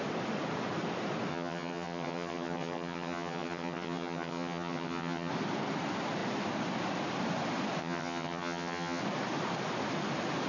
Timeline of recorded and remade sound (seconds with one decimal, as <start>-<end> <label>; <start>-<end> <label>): 0.0-1.3 recorded; 1.3-5.3 remade; 5.3-7.8 recorded; 7.8-9.0 remade; 9.0-10.5 recorded